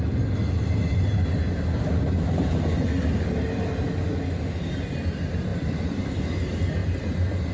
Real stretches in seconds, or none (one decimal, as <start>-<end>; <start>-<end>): 0.0-5.5; 6.2-6.8